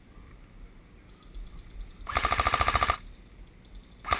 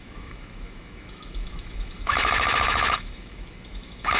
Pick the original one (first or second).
first